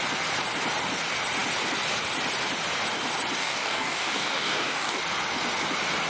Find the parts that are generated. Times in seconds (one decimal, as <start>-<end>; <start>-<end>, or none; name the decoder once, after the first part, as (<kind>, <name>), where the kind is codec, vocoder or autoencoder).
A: 3.4-5.0 (codec, DAC)